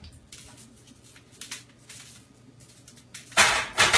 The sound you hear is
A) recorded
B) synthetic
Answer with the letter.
A